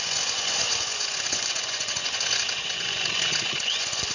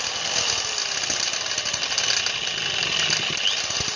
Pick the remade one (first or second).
first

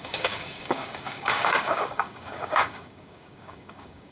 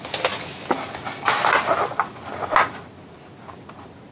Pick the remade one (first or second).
first